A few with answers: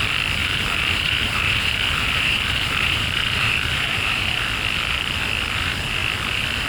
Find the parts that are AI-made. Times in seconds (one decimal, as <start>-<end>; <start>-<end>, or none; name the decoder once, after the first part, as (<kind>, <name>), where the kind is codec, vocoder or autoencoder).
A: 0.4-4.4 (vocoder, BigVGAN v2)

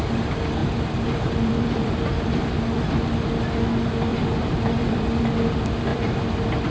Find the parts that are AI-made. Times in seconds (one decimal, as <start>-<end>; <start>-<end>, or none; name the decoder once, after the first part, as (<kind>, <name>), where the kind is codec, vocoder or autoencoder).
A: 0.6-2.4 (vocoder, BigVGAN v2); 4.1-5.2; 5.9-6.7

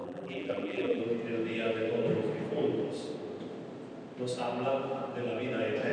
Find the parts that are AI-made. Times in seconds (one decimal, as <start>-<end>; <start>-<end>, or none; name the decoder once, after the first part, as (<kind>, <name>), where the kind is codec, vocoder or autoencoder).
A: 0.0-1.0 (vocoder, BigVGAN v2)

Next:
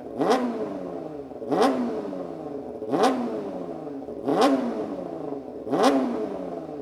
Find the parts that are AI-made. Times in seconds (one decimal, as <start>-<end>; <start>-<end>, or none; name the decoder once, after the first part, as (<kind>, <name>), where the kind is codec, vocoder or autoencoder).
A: 4.3-5.0 (vocoder, BigVGAN v2)